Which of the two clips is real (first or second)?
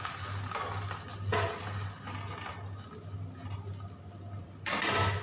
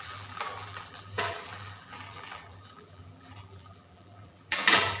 first